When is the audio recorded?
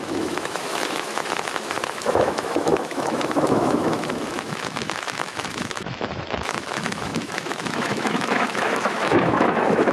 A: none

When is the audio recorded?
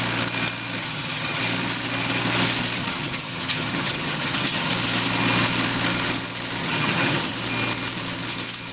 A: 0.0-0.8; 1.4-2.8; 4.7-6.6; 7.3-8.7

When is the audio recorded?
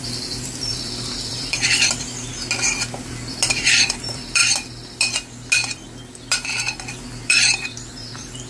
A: 2.3-3.5; 4.4-6.9